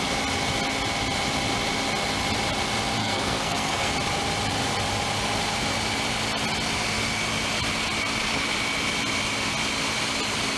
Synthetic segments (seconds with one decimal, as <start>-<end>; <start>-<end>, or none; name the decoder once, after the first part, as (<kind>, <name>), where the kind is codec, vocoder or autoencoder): 3.0-3.9 (codec, SNAC)